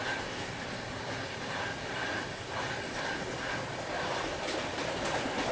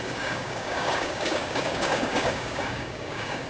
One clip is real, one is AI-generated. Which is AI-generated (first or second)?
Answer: second